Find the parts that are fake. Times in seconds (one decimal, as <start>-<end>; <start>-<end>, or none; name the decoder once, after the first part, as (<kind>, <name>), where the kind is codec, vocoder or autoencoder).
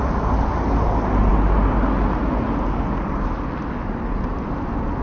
none